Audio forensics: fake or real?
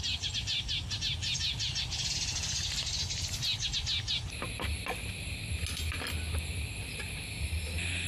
real